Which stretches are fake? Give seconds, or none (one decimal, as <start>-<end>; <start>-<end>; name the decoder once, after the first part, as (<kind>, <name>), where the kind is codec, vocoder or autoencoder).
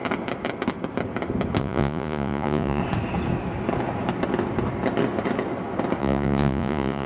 1.6-2.8 (vocoder, Vocos); 6.0-7.1